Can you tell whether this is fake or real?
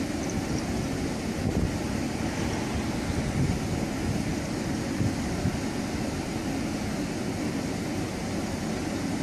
real